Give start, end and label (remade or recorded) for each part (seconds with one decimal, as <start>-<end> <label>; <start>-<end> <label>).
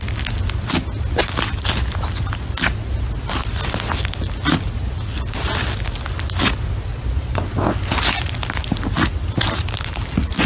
0.0-6.9 recorded; 6.9-7.7 remade; 7.7-10.5 recorded